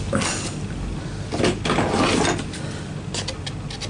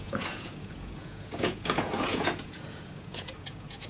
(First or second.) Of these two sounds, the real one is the first